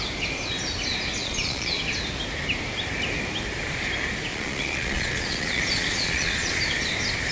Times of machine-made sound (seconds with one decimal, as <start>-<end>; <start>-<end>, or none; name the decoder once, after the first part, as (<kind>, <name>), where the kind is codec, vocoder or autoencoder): 1.2-1.8 (vocoder, Vocos); 4.3-6.6